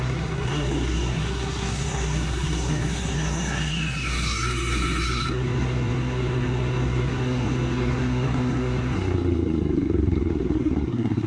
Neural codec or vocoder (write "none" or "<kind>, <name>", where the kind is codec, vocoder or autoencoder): codec, SNAC